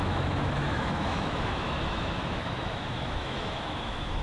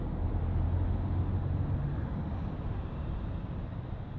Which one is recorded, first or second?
second